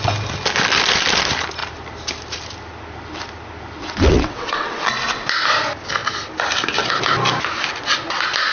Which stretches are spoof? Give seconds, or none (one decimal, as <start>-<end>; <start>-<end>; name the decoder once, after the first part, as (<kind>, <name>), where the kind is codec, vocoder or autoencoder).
3.8-4.8 (vocoder, WaveNeXt)